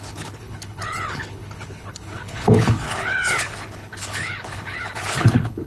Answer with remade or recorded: remade